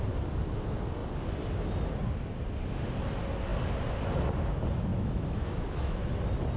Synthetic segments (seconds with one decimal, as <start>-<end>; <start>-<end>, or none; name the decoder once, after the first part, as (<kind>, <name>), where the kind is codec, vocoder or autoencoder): 4.9-6.1 (autoencoder, DAC-VAE)